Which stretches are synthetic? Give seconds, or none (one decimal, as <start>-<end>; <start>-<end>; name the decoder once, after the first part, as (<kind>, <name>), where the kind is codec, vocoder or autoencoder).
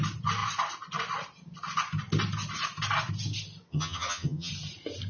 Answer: 3.7-4.5 (vocoder, HiFi-GAN)